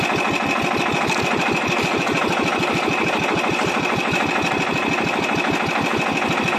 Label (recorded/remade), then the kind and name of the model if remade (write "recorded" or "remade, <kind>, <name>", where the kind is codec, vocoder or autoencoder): recorded